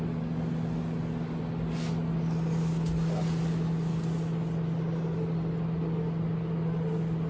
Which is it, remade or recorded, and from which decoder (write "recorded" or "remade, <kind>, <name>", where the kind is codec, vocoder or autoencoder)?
recorded